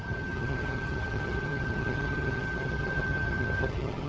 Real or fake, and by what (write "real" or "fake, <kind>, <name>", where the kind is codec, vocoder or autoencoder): fake, vocoder, HiFi-GAN